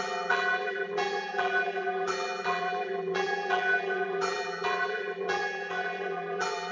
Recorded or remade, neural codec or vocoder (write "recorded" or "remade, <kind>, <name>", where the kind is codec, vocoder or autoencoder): remade, vocoder, BigVGAN v2